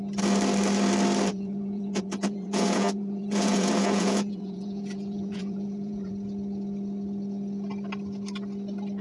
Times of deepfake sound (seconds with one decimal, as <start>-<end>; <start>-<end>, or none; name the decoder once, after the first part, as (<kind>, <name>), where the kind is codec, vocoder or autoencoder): 1.3-6.1 (vocoder, Vocos)